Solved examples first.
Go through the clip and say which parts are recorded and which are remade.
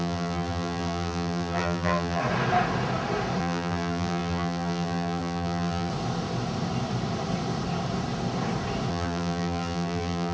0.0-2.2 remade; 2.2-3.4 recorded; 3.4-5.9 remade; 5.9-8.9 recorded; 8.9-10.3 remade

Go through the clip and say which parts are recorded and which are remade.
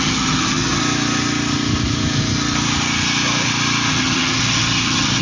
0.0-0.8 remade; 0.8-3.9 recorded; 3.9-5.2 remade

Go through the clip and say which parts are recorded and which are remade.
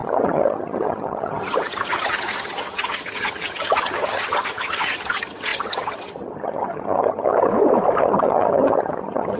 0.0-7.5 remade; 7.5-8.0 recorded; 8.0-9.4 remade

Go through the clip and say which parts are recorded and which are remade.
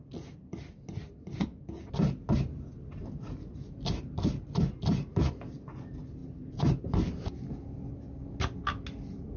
0.0-9.4 recorded